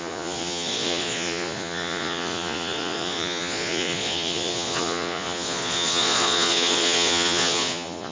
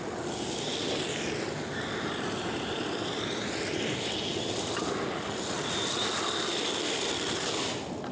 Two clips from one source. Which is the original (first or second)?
second